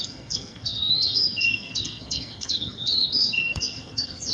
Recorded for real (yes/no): no